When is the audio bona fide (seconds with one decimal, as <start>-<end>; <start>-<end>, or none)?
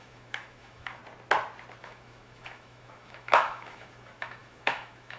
1.0-1.8